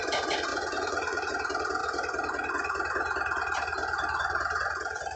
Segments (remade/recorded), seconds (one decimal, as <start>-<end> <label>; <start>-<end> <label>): 0.0-0.5 recorded; 0.5-1.3 remade; 1.3-5.2 recorded